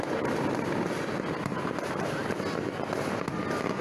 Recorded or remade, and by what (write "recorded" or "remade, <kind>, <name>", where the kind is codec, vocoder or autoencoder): recorded